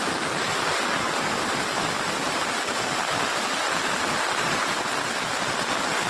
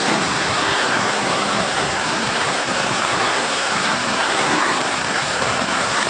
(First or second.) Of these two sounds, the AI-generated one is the second